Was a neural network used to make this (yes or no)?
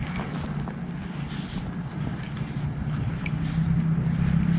no